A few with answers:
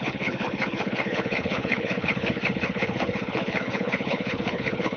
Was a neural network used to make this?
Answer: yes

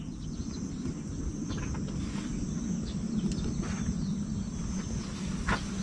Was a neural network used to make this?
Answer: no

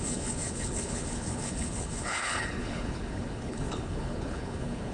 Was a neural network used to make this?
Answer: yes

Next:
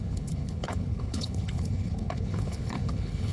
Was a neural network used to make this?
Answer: yes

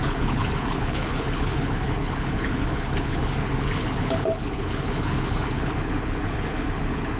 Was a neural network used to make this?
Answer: yes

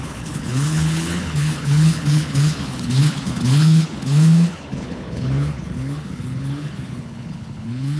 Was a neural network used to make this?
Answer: yes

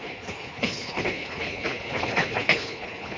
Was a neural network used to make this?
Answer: yes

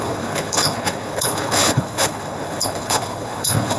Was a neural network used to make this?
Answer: yes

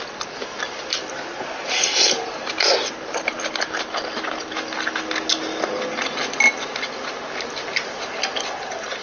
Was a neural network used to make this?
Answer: no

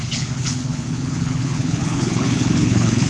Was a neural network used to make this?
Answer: yes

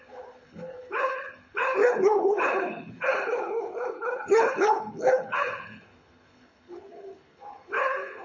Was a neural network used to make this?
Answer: yes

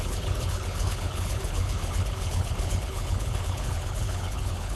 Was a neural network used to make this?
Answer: yes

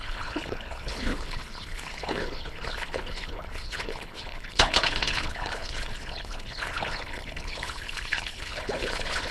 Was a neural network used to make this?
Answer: yes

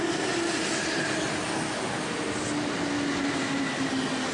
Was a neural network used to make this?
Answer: no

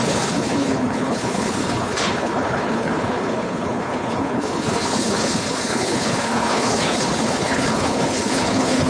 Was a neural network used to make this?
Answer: yes